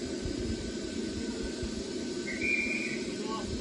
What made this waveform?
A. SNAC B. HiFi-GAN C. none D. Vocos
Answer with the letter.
C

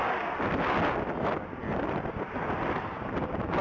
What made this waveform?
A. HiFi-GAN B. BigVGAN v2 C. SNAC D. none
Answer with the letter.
D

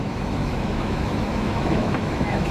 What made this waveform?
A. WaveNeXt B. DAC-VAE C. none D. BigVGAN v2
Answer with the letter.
B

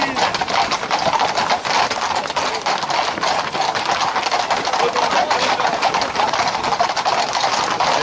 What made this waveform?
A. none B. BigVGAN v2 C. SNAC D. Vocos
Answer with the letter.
A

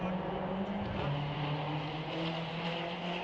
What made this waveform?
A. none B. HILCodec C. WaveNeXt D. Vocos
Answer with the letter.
A